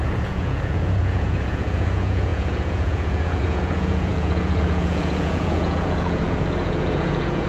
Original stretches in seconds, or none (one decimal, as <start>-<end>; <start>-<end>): none